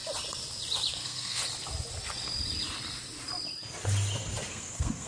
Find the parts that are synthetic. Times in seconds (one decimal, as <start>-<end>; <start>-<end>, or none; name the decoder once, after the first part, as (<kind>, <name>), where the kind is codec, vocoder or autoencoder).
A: 0.9-1.4 (codec, SNAC); 4.5-5.1